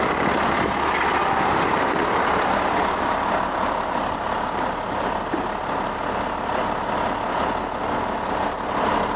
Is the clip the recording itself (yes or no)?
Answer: yes